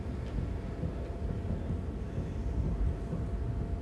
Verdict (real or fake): real